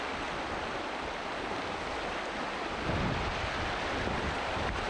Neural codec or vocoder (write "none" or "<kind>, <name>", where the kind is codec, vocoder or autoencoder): none